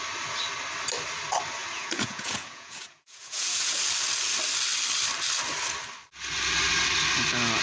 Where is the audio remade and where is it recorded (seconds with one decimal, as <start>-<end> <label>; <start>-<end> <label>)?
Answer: 0.0-1.6 recorded; 1.6-3.8 remade; 3.8-7.6 recorded

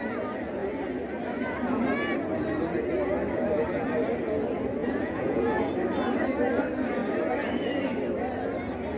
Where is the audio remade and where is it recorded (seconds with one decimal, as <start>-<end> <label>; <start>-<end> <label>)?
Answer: 0.0-4.8 recorded; 4.8-5.7 remade; 5.7-9.0 recorded